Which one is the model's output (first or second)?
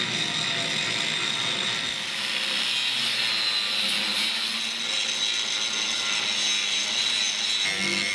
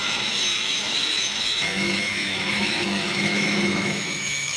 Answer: second